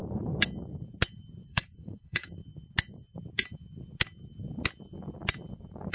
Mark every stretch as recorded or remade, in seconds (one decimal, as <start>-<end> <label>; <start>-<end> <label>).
0.0-1.4 recorded; 1.4-2.4 remade; 2.4-5.9 recorded